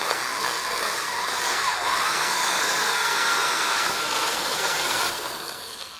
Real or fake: fake